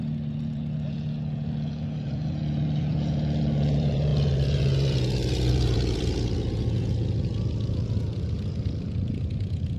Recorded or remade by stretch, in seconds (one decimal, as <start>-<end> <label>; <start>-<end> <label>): 0.0-9.8 remade